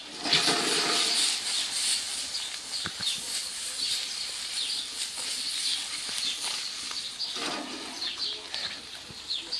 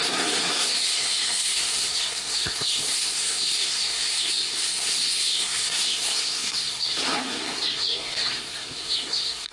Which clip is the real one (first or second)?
first